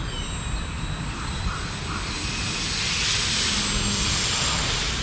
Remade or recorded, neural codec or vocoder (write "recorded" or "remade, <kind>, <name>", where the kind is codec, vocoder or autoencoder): recorded